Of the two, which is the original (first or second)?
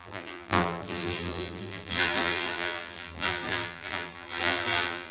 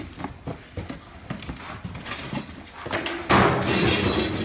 second